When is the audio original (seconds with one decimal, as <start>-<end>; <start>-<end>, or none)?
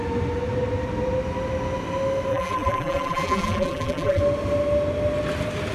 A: 0.0-2.3; 4.2-5.7